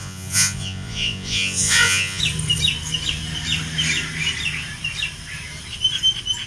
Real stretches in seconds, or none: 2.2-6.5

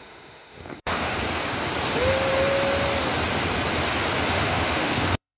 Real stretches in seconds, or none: 1.1-4.3

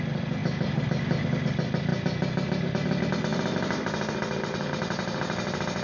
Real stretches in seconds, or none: 0.0-5.8

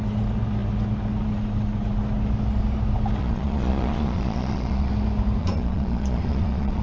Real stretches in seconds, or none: 0.0-3.2; 4.9-5.4

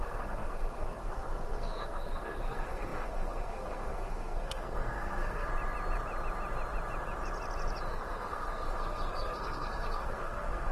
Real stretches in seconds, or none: 5.5-7.9